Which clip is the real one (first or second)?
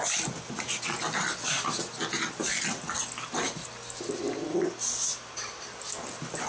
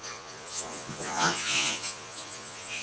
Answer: first